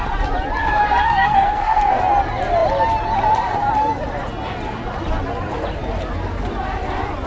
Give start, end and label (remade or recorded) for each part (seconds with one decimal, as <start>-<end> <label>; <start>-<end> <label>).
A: 0.0-0.6 recorded; 0.6-2.0 remade; 2.0-7.3 recorded